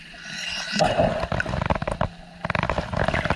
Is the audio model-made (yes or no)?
no